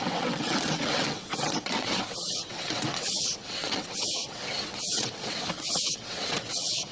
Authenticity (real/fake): fake